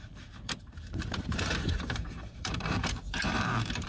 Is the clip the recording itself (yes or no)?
no